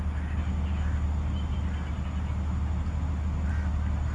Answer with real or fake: real